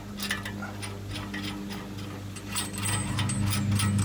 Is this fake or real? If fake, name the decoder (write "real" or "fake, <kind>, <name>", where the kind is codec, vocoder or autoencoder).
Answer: real